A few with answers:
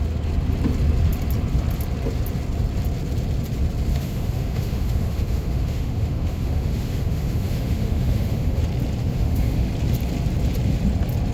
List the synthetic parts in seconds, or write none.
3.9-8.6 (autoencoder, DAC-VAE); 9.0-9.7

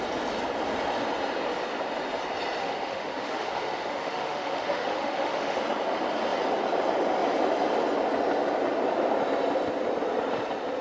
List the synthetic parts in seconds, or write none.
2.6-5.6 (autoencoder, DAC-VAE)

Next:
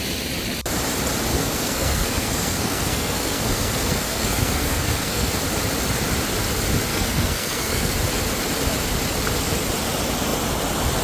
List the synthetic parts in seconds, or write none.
1.3-5.3 (codec, SNAC); 6.9-7.9

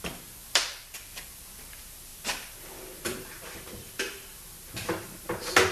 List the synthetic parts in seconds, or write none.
0.4-1.6 (vocoder, BigVGAN v2); 2.1-3.9

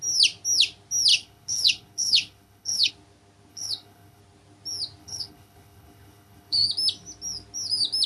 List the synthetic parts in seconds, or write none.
1.1-2.9 (codec, HILCodec); 3.5-4.2; 5.0-6.7

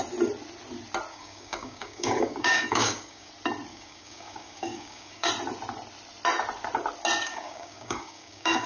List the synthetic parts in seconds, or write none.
1.1-3.3 (codec, DAC); 3.7-5.3; 7.3-8.7

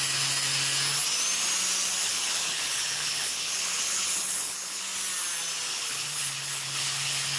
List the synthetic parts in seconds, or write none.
2.0-4.8 (codec, HILCodec); 5.7-7.4

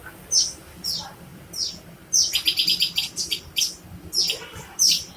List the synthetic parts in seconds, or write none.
0.0-1.3 (vocoder, BigVGAN v2); 4.4-5.2